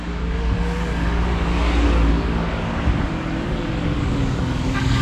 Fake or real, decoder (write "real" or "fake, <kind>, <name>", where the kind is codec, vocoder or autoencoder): fake, codec, DAC